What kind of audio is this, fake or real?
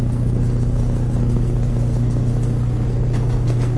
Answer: fake